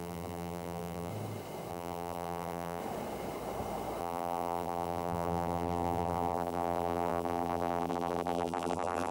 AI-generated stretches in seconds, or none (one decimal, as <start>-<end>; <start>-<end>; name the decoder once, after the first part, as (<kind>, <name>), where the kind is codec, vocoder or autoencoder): 0.0-1.1 (vocoder, BigVGAN v2); 1.7-2.8; 4.0-9.1